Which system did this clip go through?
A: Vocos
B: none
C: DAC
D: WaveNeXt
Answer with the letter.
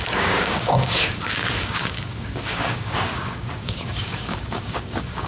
C